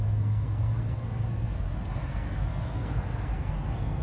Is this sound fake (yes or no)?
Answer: yes